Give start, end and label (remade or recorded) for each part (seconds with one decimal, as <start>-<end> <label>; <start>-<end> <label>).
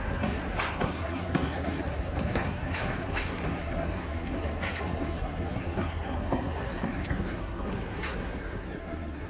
0.0-9.3 remade